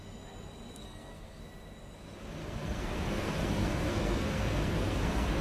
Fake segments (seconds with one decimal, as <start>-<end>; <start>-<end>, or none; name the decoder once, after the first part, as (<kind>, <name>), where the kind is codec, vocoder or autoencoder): 0.8-1.4 (codec, SNAC); 2.4-5.4